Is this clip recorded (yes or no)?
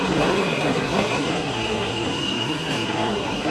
no